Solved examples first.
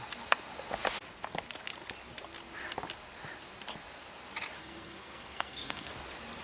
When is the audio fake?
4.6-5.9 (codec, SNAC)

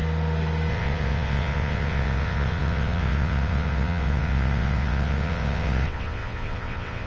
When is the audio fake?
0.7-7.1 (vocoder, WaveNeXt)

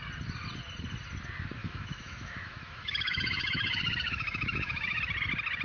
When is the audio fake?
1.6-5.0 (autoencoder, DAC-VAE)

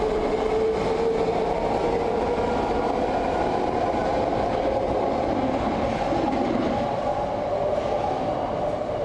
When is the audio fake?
none

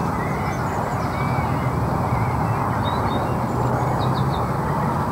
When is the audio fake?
0.0-0.5 (vocoder, BigVGAN v2)